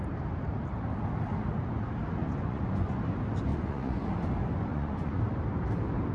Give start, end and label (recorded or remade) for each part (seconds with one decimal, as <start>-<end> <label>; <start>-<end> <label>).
0.0-2.2 recorded; 2.2-3.0 remade; 3.0-3.5 recorded; 3.5-4.1 remade; 4.1-4.7 recorded; 4.7-5.2 remade; 5.2-6.1 recorded